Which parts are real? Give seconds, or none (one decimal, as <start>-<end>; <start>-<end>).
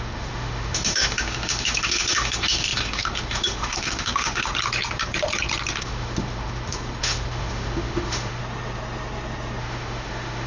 4.5-5.8; 8.4-9.6